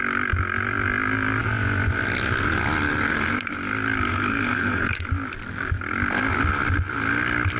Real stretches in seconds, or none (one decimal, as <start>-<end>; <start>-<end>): 0.0-4.1; 5.1-7.6